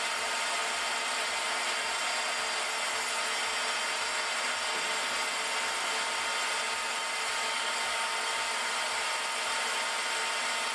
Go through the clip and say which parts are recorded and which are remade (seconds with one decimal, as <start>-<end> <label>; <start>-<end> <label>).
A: 0.0-7.4 recorded; 7.4-8.1 remade; 8.1-10.7 recorded